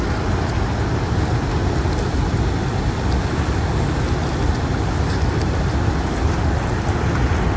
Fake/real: real